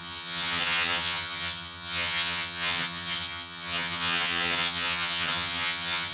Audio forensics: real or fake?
fake